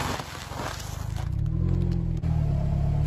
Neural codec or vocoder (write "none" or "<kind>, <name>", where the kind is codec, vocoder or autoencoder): none